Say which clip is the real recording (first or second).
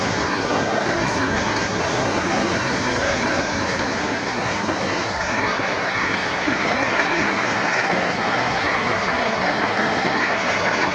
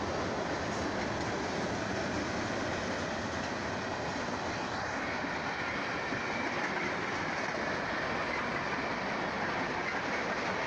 second